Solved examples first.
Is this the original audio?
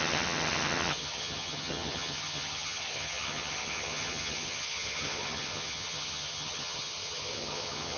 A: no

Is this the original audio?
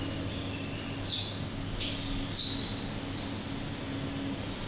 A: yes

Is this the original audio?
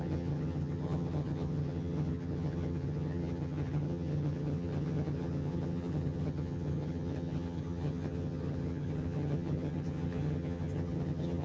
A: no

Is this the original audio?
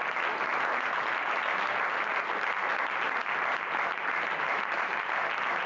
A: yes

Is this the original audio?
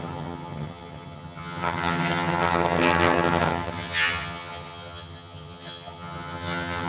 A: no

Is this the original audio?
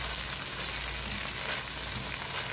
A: yes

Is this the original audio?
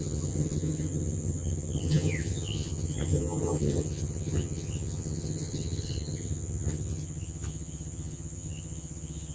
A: no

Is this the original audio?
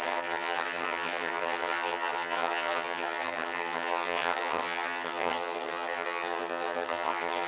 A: no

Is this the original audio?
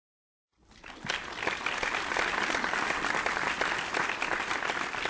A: yes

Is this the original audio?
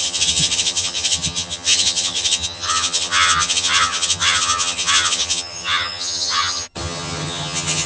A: no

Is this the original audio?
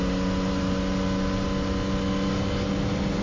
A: yes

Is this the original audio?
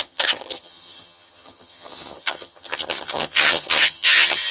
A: no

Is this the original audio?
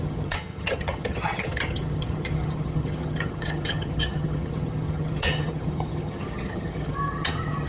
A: no